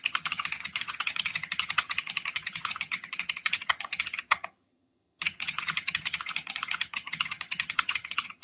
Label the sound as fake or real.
fake